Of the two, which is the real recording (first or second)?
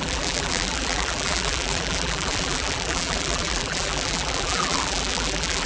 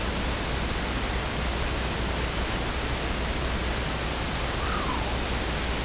second